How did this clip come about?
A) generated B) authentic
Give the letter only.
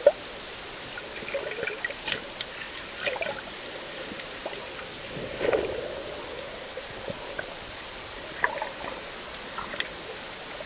B